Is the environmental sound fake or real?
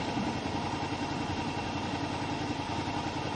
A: real